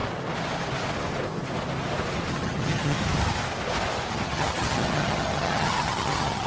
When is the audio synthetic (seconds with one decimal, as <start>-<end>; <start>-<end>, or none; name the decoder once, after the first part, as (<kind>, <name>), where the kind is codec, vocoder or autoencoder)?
2.3-3.0 (vocoder, HiFi-GAN); 4.1-6.5